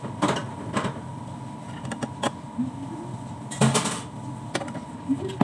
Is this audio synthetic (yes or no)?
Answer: no